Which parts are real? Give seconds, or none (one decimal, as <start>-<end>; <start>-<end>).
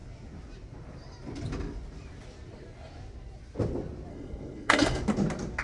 0.0-4.1; 5.0-5.6